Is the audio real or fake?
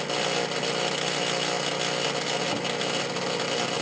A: real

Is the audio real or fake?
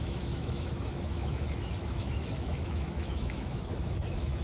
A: fake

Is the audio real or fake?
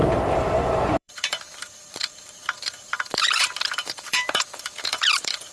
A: fake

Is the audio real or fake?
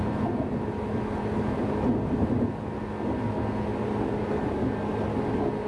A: real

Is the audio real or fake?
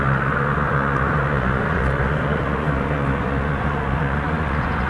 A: fake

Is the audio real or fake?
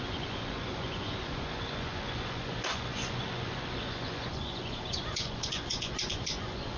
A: fake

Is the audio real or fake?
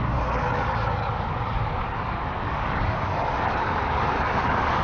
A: fake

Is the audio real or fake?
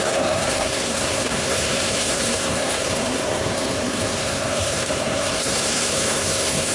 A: fake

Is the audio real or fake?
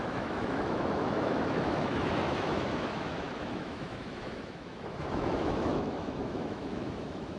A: fake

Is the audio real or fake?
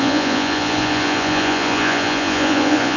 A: fake